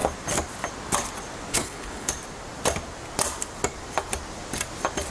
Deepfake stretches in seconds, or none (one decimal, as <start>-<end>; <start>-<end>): 1.5-2.1